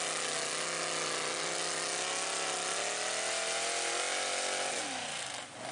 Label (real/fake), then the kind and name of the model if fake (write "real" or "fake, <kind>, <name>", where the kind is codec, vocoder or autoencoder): real